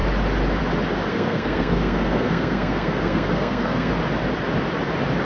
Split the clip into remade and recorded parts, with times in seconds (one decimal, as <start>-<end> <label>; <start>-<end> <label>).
0.0-1.1 recorded; 1.1-3.9 remade; 3.9-5.2 recorded